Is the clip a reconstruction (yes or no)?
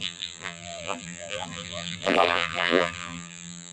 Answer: yes